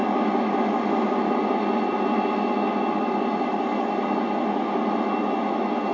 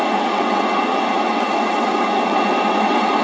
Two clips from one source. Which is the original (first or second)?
first